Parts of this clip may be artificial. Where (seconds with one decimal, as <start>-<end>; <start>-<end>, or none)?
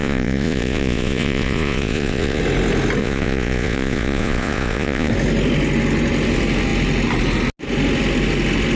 0.0-2.4; 3.0-5.1